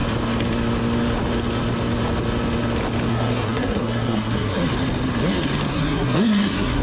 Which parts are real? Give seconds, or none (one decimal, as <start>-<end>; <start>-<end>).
0.0-3.1; 4.6-5.7